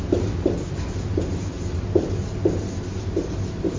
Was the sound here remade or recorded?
recorded